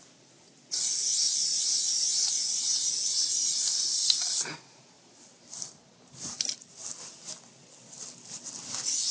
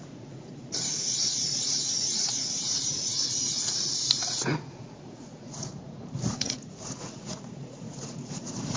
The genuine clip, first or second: first